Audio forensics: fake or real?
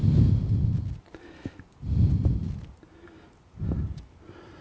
real